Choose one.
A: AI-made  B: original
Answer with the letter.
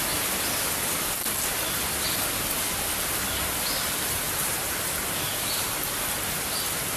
B